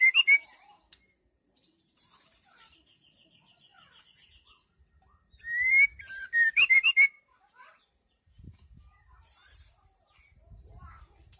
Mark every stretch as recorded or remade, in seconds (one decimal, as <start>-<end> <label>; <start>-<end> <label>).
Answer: 0.0-11.4 remade

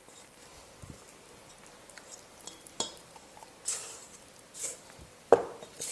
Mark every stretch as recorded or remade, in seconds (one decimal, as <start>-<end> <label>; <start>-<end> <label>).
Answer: 0.0-1.4 remade; 1.4-2.9 recorded; 2.9-5.9 remade

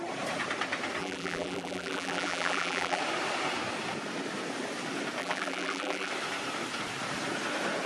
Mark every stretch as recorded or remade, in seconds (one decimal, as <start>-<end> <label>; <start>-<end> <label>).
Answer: 0.0-1.0 recorded; 1.0-3.0 remade; 3.0-5.2 recorded; 5.2-6.1 remade; 6.1-7.9 recorded

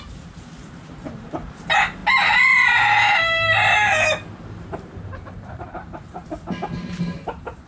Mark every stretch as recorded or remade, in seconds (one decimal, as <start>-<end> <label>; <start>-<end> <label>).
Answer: 0.0-2.0 remade; 2.0-4.5 recorded; 4.5-6.2 remade; 6.2-7.7 recorded